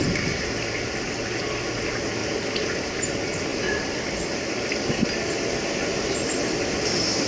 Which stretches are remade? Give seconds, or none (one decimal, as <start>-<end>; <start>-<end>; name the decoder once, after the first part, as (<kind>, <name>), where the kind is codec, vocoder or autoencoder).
none